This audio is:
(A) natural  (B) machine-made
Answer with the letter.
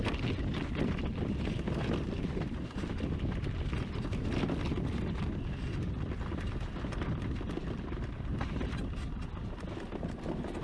A